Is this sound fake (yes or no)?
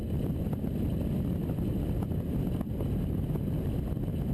no